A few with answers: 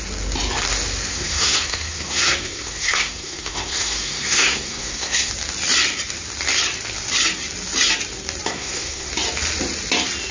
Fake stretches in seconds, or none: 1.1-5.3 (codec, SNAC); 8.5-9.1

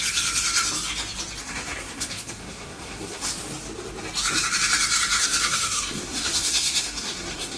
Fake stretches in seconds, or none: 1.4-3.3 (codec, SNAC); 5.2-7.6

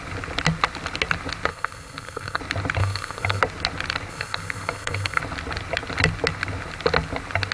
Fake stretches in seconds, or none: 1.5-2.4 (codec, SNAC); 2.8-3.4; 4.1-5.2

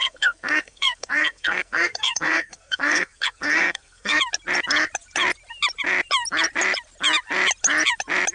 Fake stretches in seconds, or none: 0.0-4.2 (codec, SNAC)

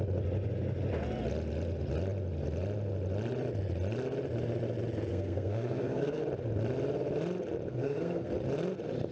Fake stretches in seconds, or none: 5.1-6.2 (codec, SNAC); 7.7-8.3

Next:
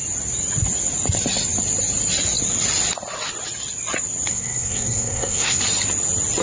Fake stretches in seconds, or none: 4.3-5.6 (codec, SNAC)

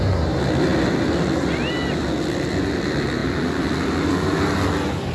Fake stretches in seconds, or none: none